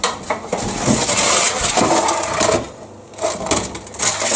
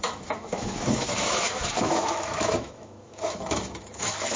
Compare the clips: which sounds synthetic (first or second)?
second